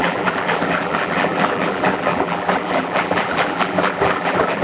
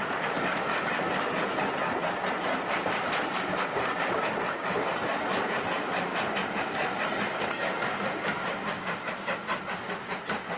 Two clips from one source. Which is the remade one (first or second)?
first